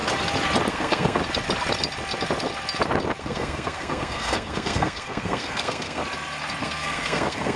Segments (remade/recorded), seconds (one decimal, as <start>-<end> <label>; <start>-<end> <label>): 0.0-0.7 recorded; 0.7-1.2 remade; 1.2-3.2 recorded; 3.2-6.0 remade; 6.0-6.6 recorded; 6.6-7.6 remade